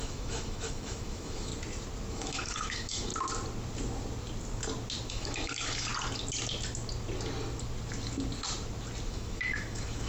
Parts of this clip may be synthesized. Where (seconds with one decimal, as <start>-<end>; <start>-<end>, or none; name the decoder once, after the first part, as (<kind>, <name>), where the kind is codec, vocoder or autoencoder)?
0.0-1.5 (autoencoder, DAC-VAE); 2.1-3.1; 5.1-5.9; 9.1-10.1